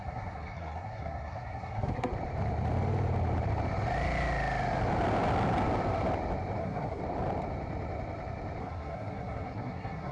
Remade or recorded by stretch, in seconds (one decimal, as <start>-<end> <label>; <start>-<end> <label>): 0.0-2.1 remade; 2.1-6.6 recorded; 6.6-7.0 remade; 7.0-8.6 recorded; 8.6-10.1 remade